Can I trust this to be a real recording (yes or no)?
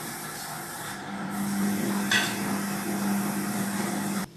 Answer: no